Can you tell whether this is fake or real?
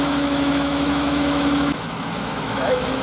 fake